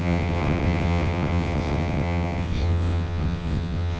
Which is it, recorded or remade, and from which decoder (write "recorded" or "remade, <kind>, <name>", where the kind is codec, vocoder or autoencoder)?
remade, vocoder, WaveNeXt